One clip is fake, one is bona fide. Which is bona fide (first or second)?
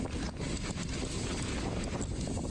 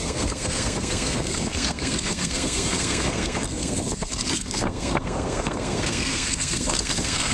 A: first